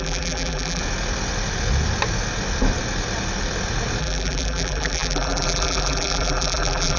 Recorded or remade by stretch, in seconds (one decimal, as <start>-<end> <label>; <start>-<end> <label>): 0.0-0.8 remade; 0.8-4.0 recorded; 4.0-7.0 remade

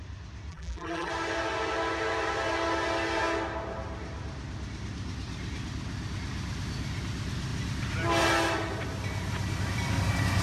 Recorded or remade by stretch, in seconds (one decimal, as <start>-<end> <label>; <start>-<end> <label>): 0.0-0.5 recorded; 0.5-1.1 remade; 1.1-10.4 recorded

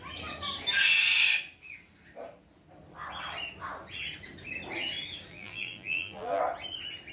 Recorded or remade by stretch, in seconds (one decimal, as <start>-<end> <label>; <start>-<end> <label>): 0.0-5.3 recorded; 5.3-6.4 remade; 6.4-7.1 recorded

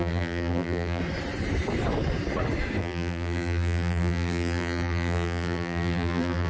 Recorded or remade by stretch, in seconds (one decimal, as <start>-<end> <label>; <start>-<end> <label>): 0.0-1.0 remade; 1.0-2.8 recorded; 2.8-6.5 remade